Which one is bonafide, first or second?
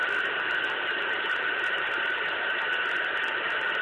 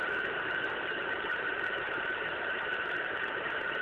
first